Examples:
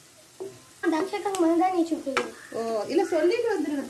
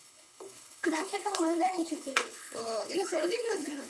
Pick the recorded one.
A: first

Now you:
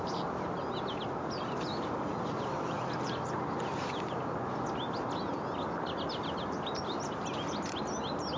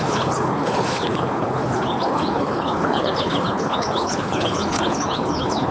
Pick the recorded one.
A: first